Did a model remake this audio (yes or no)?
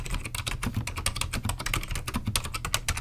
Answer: no